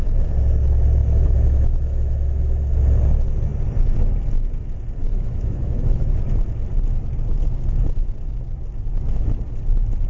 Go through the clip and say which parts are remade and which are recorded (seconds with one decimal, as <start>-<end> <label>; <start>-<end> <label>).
0.0-1.0 recorded; 1.0-2.4 remade; 2.4-5.0 recorded; 5.0-6.2 remade; 6.2-10.1 recorded